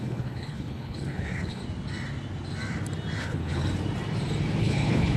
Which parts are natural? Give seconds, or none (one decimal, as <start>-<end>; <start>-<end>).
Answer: 1.6-3.2; 3.6-4.6